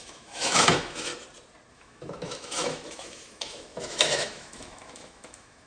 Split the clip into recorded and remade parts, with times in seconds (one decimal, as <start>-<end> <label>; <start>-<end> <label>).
0.0-1.1 remade; 1.1-1.7 recorded; 1.7-5.7 remade